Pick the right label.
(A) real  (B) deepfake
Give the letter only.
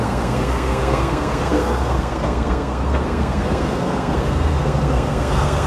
B